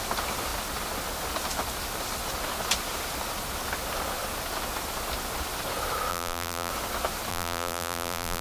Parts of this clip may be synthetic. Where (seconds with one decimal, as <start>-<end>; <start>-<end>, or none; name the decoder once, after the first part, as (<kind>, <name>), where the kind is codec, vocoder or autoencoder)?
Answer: 6.1-6.7 (vocoder, BigVGAN v2); 7.3-8.4